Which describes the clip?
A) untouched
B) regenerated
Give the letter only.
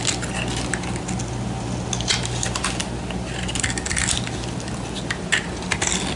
A